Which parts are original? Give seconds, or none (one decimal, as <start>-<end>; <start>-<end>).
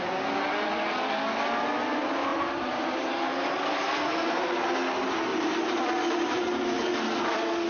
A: 0.0-2.3; 4.0-5.3; 7.0-7.7